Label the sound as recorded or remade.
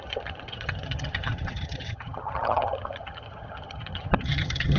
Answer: remade